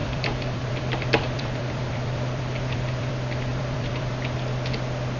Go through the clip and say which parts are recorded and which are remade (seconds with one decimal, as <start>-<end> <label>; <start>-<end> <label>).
0.0-3.1 remade; 3.1-3.5 recorded; 3.5-4.1 remade; 4.1-5.2 recorded